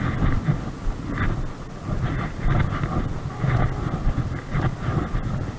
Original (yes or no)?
yes